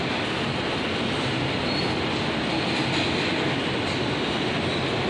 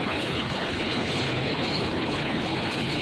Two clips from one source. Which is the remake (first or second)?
second